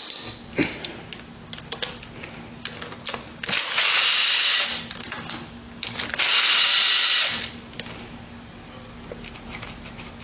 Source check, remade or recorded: recorded